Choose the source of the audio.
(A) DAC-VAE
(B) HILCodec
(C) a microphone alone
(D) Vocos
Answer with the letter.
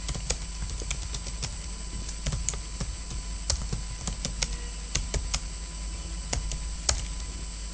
C